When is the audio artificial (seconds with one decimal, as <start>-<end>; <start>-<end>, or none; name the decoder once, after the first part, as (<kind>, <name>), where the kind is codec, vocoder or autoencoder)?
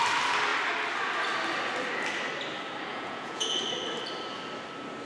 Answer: 2.9-3.5 (vocoder, Vocos)